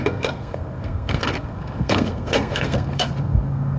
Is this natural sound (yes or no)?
no